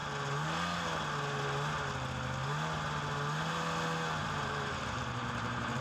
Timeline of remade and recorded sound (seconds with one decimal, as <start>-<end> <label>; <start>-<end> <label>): 0.0-4.2 recorded; 4.2-5.8 remade